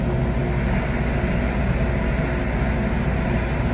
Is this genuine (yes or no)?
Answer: yes